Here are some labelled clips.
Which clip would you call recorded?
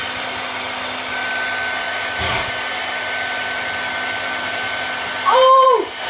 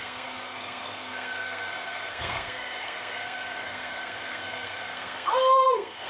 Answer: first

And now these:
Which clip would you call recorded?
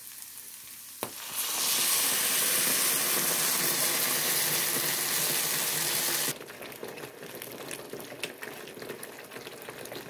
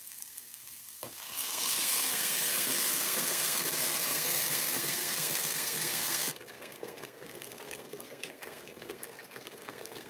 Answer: first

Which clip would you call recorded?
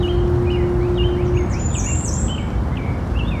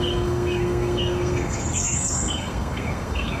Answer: first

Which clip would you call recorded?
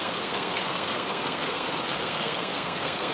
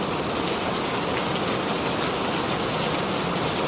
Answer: second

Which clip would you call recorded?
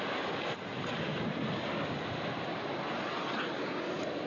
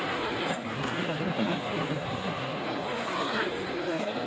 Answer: first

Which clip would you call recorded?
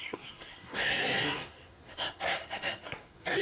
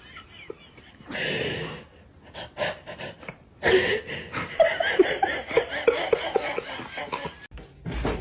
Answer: second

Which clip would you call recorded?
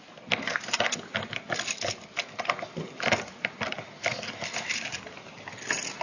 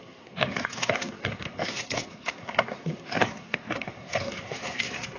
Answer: first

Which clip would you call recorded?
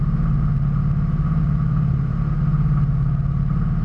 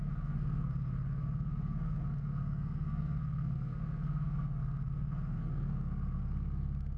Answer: first